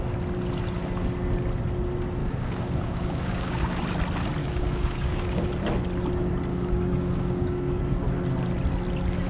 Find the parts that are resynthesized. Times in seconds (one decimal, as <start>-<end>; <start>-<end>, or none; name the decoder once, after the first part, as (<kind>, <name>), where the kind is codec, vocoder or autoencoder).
2.2-3.8 (codec, DAC); 4.4-5.5; 6.5-7.8